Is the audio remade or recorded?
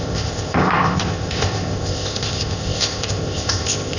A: remade